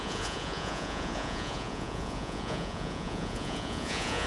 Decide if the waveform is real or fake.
fake